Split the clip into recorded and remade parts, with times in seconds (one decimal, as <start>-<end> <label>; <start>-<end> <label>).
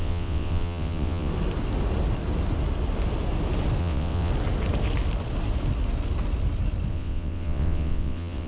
0.0-1.3 remade; 1.3-3.8 recorded; 3.8-4.3 remade; 4.3-6.9 recorded; 6.9-8.5 remade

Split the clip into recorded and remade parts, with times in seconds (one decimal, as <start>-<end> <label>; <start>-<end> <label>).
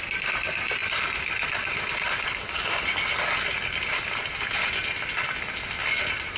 0.0-6.4 recorded